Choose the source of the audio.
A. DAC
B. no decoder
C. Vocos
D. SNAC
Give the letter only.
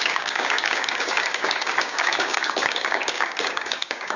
A